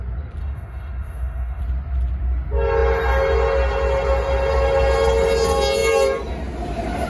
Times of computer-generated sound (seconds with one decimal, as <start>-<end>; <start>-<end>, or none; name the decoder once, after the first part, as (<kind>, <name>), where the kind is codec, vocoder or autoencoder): 0.4-1.6 (autoencoder, DAC-VAE)